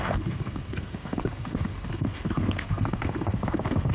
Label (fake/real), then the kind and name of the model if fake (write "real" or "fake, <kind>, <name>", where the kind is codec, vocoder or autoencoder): fake, codec, SNAC